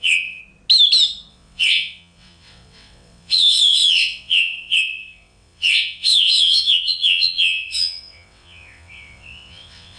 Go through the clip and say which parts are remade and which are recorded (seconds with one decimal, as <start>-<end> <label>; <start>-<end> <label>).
0.0-0.4 remade; 0.4-1.3 recorded; 1.3-10.0 remade